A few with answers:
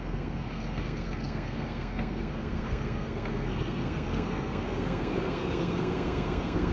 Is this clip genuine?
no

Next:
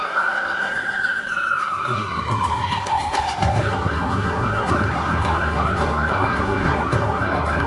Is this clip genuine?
no